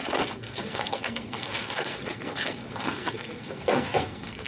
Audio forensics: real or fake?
fake